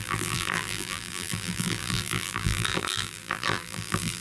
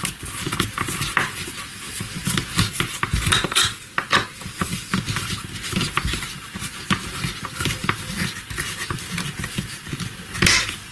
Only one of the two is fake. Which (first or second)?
first